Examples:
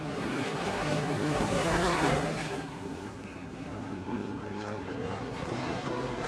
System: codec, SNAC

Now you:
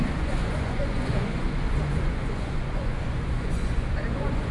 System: vocoder, Vocos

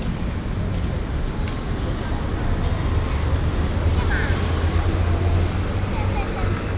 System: none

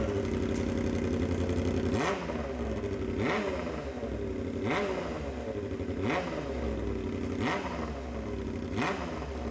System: none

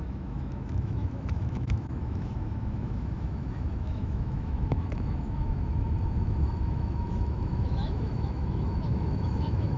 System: autoencoder, DAC-VAE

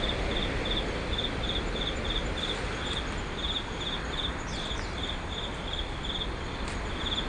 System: none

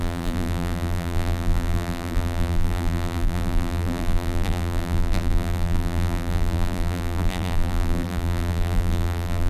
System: vocoder, BigVGAN v2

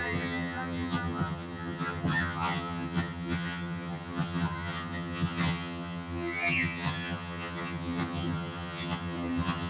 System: vocoder, HiFi-GAN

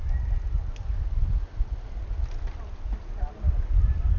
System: none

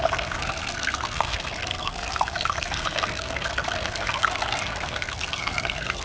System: codec, SNAC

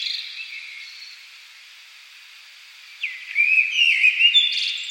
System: none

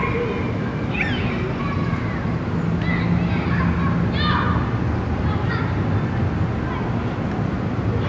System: none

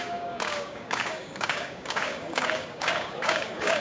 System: codec, DAC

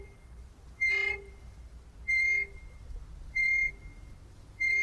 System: none